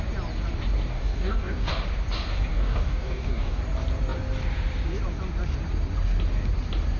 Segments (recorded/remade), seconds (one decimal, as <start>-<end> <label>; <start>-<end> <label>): 0.0-0.9 recorded; 0.9-1.7 remade; 1.7-2.5 recorded; 2.5-3.6 remade; 3.6-7.0 recorded